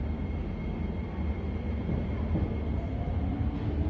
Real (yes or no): yes